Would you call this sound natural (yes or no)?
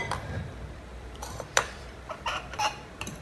no